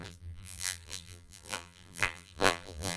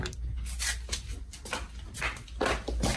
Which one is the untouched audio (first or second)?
second